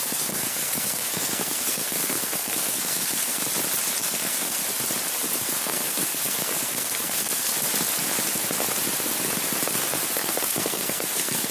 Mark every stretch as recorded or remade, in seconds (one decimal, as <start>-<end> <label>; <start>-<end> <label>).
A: 0.0-3.4 remade; 3.4-4.0 recorded; 4.0-4.6 remade; 4.6-5.4 recorded; 5.4-7.5 remade; 7.5-10.2 recorded; 10.2-11.5 remade